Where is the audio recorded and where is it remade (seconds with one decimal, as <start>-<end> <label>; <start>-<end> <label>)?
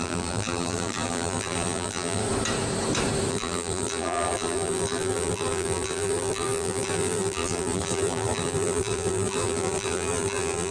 0.0-2.2 remade; 2.2-3.3 recorded; 3.3-10.7 remade